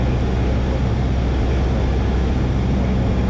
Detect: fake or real real